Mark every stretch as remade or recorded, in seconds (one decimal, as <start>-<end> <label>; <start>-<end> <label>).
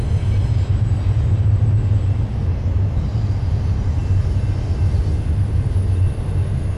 0.0-6.8 recorded